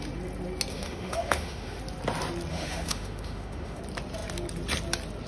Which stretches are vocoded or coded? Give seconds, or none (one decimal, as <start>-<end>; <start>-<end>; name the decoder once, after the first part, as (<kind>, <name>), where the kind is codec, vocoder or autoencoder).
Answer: 0.7-1.8 (autoencoder, DAC-VAE); 2.5-3.8